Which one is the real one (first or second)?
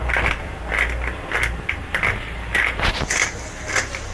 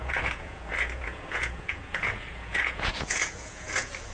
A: first